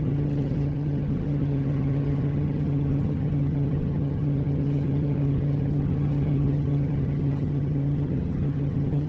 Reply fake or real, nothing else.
fake